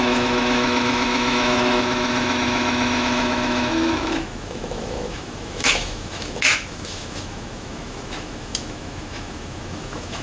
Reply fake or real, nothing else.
fake